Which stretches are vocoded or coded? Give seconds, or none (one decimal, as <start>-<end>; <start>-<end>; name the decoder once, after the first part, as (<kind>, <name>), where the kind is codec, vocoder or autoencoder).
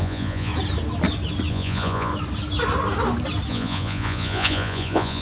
0.0-0.5 (vocoder, Vocos); 1.5-2.1; 3.5-5.2